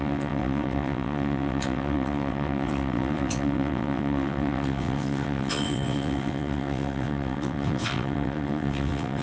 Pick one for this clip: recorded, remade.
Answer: remade